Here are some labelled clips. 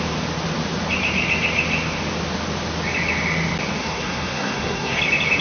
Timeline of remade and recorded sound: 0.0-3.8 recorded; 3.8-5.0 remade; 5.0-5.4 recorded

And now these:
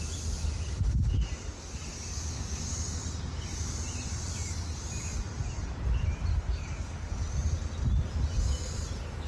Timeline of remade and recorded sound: 0.0-2.1 recorded; 2.1-2.7 remade; 2.7-6.3 recorded; 6.3-7.1 remade; 7.1-9.3 recorded